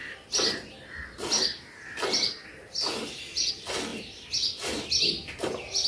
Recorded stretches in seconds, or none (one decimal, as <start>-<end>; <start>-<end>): 0.0-5.9